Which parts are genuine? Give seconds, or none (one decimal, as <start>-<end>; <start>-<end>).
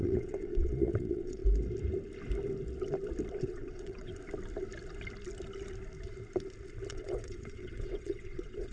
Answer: 1.4-3.4; 4.1-6.9